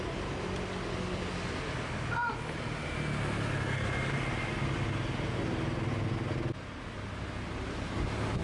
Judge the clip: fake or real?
real